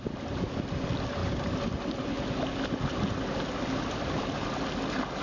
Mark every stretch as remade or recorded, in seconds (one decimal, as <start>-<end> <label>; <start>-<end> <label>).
0.0-5.2 recorded